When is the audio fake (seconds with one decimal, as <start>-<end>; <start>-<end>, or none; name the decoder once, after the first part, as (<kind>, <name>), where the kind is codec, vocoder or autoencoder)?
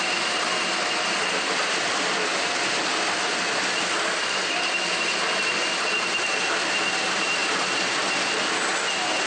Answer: none